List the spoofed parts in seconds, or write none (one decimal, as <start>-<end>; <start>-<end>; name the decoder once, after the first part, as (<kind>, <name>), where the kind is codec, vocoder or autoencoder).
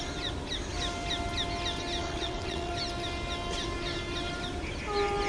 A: 2.0-2.7 (vocoder, WaveNeXt)